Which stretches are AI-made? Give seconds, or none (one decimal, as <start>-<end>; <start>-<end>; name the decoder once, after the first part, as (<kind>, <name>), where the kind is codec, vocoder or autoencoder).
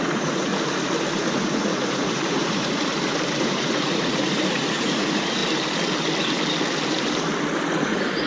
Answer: 0.0-0.5 (vocoder, Vocos); 1.3-2.9; 3.4-5.4; 7.7-8.3